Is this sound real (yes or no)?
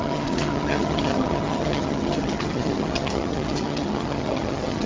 no